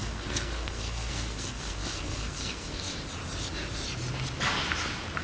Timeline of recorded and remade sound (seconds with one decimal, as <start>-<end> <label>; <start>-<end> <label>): 0.0-2.9 remade; 2.9-5.2 recorded